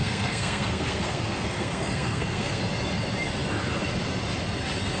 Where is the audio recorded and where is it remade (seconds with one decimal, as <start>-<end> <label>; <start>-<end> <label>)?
0.0-2.6 remade; 2.6-5.0 recorded

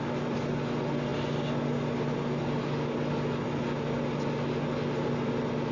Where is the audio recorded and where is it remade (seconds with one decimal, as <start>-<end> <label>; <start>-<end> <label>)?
0.0-5.7 recorded